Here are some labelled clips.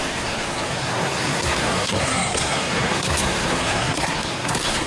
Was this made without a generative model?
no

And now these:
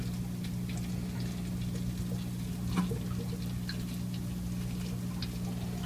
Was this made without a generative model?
yes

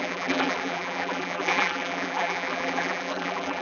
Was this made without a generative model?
no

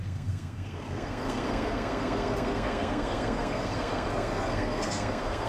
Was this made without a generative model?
no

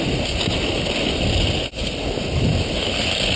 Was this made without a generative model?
yes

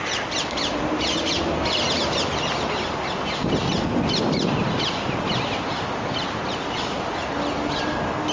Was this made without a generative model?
yes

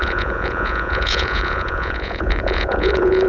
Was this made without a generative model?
no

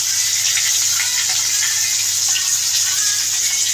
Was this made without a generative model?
yes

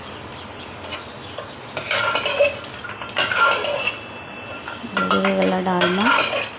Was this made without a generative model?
yes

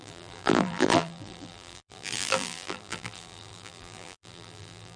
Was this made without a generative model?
no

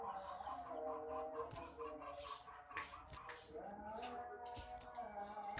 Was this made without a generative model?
yes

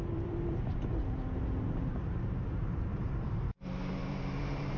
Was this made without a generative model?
no